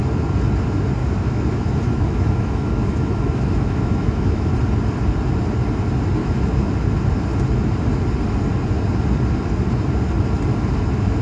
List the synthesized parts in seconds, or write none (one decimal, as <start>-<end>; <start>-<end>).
1.0-4.5; 6.2-6.7